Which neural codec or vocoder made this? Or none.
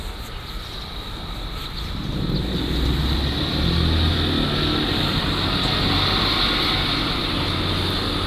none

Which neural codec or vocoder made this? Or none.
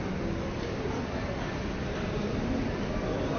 none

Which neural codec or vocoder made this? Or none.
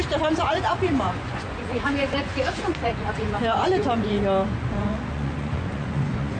vocoder, Vocos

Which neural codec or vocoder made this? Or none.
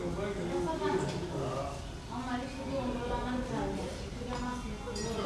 none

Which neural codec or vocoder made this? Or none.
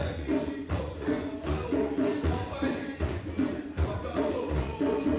vocoder, Vocos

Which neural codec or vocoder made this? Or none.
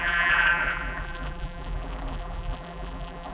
vocoder, BigVGAN v2